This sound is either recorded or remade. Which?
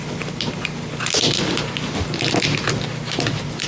recorded